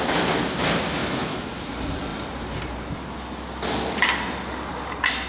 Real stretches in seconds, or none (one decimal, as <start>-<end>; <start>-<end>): 0.0-1.0; 1.7-5.3